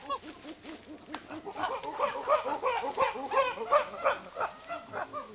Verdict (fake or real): real